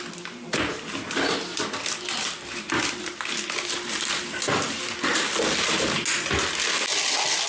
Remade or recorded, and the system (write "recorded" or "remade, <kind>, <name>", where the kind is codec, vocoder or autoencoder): recorded